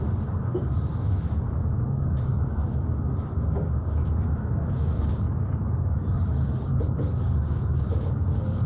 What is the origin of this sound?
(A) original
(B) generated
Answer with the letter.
B